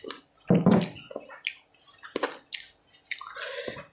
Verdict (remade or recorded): recorded